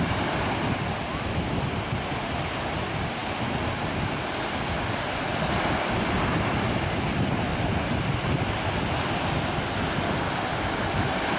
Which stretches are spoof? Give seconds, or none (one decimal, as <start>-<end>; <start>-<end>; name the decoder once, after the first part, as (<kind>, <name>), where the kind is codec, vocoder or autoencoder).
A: none